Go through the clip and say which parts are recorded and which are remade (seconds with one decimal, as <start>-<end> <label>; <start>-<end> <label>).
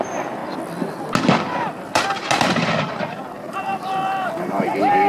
0.0-0.4 remade; 0.4-3.4 recorded; 3.4-5.1 remade